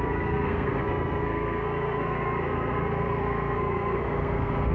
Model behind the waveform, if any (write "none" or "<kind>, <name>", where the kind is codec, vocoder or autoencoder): codec, SNAC